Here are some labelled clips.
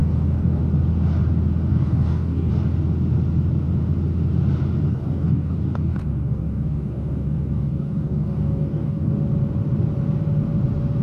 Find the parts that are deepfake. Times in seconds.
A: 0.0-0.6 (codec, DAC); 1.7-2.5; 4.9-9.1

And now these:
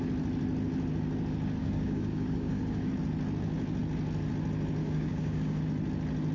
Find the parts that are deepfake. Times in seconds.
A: 1.6-2.9 (codec, DAC); 4.8-5.6

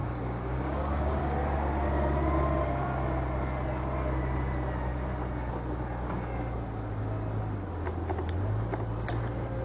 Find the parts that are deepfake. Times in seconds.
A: 0.0-1.2 (codec, DAC)

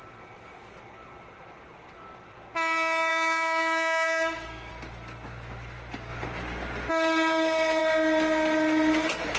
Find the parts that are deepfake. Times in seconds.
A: 3.1-4.7 (codec, DAC)

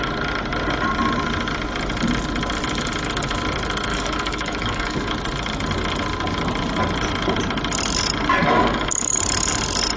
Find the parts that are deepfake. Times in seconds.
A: 3.9-5.1 (codec, DAC); 8.4-9.1

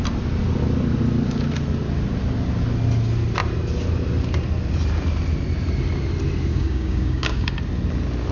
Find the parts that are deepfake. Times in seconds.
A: 6.5-7.5 (codec, DAC)

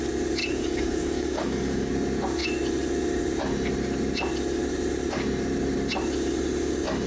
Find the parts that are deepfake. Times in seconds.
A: 0.4-1.9 (codec, DAC)